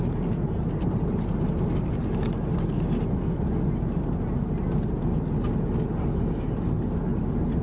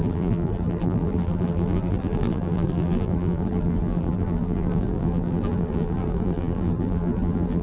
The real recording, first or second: first